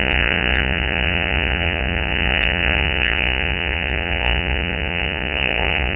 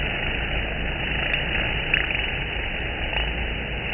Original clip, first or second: second